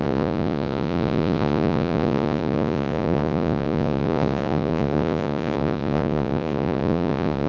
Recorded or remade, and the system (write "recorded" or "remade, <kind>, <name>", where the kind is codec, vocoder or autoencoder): remade, vocoder, Vocos